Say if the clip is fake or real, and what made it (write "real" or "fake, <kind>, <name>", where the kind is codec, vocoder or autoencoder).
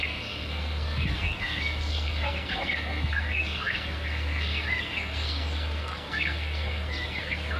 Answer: fake, codec, SNAC